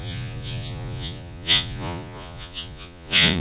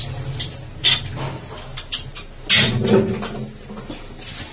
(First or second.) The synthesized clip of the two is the first